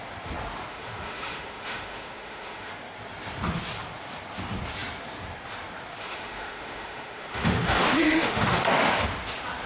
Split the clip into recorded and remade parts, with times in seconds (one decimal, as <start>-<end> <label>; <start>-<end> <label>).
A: 0.0-0.7 recorded; 0.7-2.7 remade; 2.7-6.0 recorded; 6.0-8.6 remade; 8.6-9.7 recorded